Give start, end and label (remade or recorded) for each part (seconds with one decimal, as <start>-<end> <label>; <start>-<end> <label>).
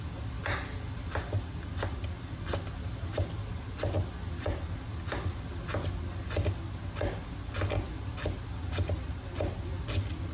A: 0.0-10.3 recorded